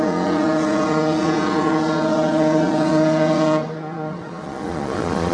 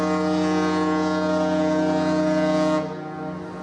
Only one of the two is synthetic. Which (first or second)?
first